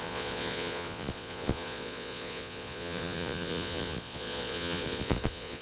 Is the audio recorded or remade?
remade